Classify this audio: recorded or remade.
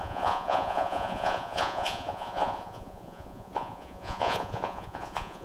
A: remade